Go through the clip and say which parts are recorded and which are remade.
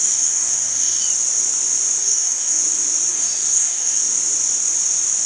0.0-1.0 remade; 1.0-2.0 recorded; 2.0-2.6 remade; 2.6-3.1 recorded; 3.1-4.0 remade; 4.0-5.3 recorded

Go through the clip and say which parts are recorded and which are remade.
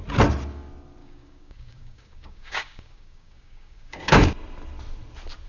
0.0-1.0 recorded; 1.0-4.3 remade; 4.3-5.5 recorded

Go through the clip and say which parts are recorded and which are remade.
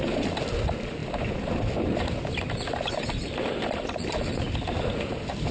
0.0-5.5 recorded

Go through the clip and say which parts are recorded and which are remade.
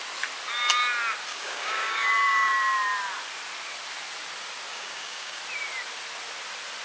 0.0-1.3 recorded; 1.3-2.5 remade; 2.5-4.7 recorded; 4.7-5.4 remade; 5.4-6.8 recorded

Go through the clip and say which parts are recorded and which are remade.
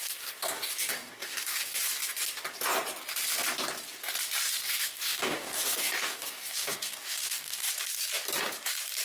0.0-1.8 remade; 1.8-4.5 recorded; 4.5-7.7 remade; 7.7-9.0 recorded